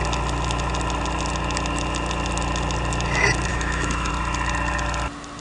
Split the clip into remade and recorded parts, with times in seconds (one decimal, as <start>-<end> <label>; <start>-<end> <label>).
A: 0.0-3.5 recorded; 3.5-4.1 remade; 4.1-5.4 recorded